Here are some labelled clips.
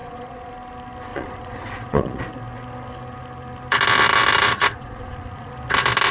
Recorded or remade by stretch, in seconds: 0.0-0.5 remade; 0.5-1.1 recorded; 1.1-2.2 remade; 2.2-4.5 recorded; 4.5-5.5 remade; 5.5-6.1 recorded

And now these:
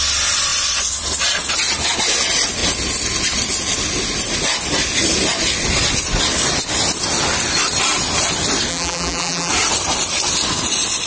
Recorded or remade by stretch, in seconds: 0.0-8.7 recorded; 8.7-9.5 remade; 9.5-11.1 recorded